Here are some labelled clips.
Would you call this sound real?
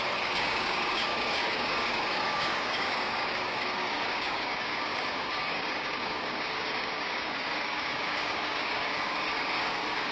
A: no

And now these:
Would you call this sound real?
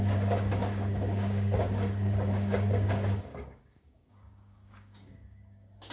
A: no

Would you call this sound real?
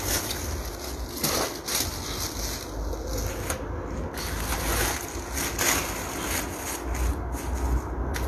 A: yes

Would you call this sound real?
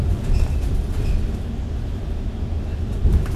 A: yes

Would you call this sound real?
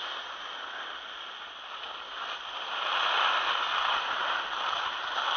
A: yes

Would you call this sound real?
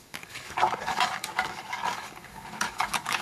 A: no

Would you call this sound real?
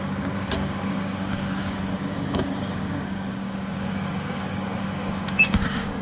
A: no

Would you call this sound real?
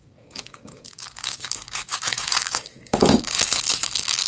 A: no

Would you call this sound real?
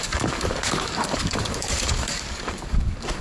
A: no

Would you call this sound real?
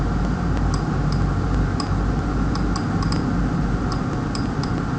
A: yes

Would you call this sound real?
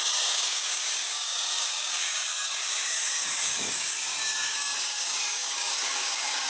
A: no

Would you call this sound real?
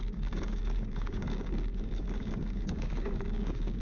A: no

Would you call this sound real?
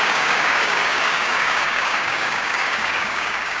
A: no